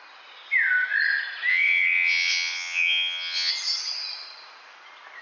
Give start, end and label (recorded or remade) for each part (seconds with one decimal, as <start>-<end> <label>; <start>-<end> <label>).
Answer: 0.0-1.5 recorded; 1.5-3.5 remade; 3.5-5.2 recorded